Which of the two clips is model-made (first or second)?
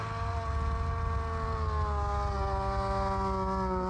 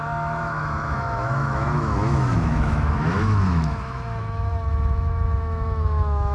second